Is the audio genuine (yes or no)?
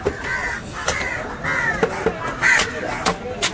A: yes